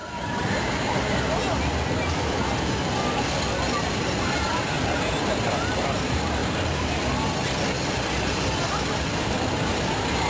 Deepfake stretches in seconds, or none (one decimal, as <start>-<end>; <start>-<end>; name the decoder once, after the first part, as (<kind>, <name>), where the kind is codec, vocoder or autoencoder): 0.0-1.6 (vocoder, BigVGAN v2); 3.8-6.4; 9.5-10.3